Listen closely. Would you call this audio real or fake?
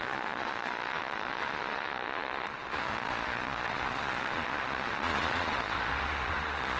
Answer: fake